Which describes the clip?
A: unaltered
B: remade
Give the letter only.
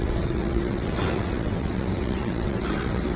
B